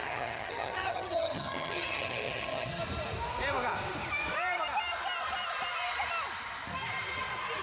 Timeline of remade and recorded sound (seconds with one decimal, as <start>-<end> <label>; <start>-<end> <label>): 0.0-2.8 remade; 2.8-7.6 recorded